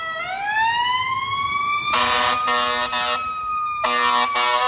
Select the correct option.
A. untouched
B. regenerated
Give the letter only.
A